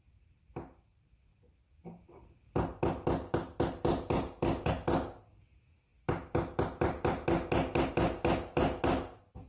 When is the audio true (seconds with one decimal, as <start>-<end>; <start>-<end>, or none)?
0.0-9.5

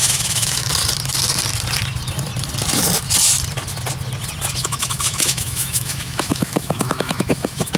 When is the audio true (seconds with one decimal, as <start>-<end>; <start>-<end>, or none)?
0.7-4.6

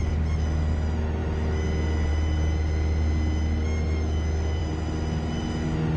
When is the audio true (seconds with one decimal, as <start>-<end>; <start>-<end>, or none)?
0.0-6.0